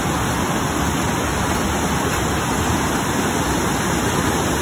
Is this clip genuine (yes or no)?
yes